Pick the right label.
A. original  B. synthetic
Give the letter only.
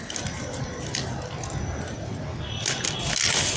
A